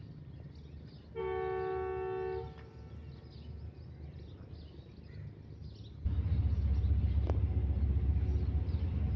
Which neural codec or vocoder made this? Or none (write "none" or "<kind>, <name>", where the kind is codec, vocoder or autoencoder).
none